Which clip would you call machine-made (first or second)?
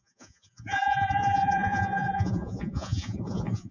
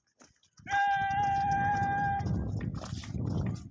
first